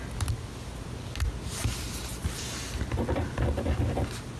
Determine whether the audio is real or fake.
real